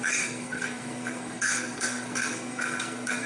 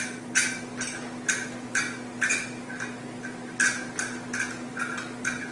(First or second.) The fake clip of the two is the first